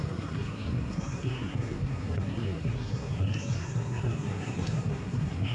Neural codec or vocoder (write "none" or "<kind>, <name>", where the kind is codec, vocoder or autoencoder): codec, SNAC